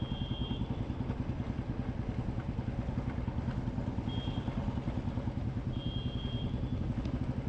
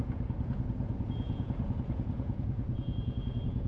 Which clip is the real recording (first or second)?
first